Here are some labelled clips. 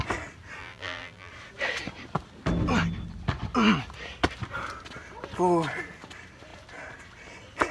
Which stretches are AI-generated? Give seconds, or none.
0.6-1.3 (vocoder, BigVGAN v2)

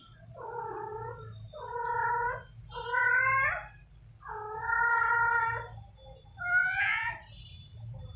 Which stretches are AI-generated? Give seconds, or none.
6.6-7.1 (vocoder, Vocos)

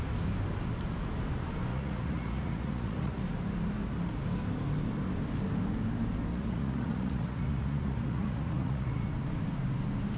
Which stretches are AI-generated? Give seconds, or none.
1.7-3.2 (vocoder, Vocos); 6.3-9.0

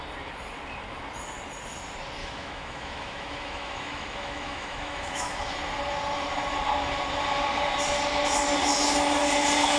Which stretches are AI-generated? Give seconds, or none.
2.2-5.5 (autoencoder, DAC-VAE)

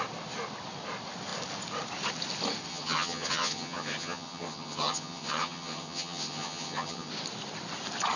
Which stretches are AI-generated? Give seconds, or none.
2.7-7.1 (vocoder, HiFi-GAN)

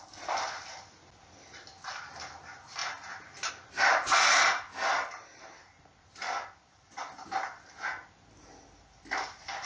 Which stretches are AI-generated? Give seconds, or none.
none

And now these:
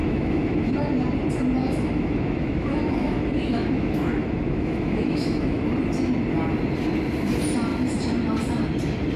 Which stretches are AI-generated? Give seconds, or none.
0.0-0.7 (autoencoder, DAC-VAE); 1.6-5.6